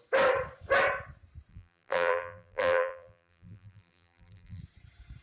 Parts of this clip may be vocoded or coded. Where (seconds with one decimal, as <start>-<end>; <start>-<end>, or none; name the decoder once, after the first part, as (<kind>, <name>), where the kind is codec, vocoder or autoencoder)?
1.5-4.6 (vocoder, BigVGAN v2)